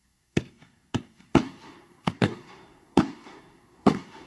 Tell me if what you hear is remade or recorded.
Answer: remade